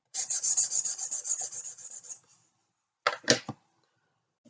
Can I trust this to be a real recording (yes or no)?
yes